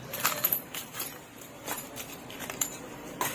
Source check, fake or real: fake